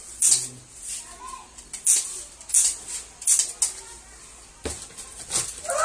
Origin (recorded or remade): recorded